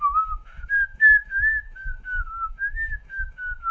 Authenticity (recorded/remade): remade